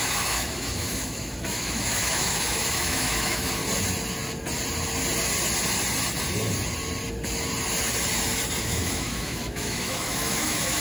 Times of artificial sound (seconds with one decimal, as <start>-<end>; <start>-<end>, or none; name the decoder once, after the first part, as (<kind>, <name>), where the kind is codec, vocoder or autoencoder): 0.0-3.6 (autoencoder, DAC-VAE); 8.6-10.8